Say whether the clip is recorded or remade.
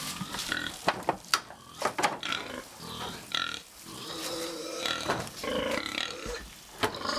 remade